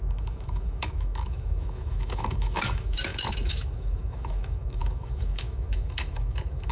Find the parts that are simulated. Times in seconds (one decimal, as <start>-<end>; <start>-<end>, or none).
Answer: 0.0-6.7